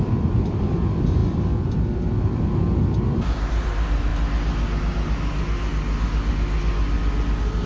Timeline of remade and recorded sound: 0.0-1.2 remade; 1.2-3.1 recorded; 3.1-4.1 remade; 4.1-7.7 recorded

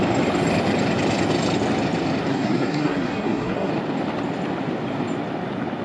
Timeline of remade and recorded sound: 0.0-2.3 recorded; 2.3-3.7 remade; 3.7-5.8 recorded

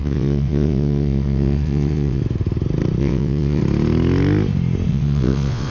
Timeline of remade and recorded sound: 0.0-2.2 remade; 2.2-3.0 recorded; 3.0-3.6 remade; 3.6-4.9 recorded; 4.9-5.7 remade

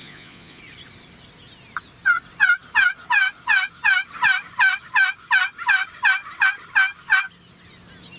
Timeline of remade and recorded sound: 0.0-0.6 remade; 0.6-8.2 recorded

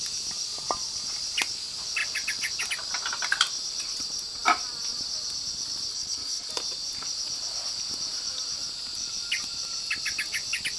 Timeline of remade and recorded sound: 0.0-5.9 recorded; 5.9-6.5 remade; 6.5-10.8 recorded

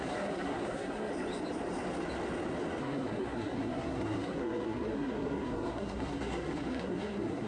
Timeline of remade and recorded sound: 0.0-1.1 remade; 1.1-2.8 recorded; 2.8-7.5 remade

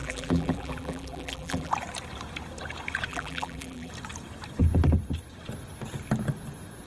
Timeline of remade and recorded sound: 0.0-1.7 remade; 1.7-3.1 recorded; 3.1-3.9 remade; 3.9-6.9 recorded

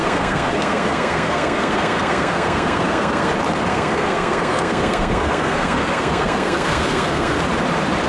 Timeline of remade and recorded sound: 0.0-3.3 remade; 3.3-3.7 recorded; 3.7-7.3 remade; 7.3-8.1 recorded